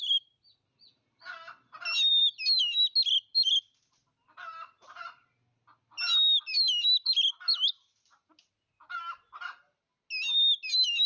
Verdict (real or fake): real